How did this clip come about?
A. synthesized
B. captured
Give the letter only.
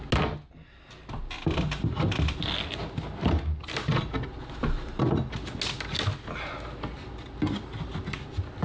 B